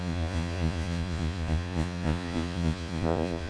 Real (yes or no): no